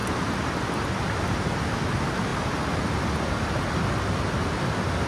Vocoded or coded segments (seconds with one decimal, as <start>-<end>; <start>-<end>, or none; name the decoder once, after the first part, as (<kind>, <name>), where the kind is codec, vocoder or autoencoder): none